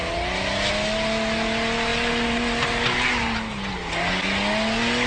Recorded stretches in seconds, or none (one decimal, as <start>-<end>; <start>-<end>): 0.0-5.1